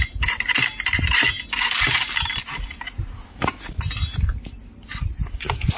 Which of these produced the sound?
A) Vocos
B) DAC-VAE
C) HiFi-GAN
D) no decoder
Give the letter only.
D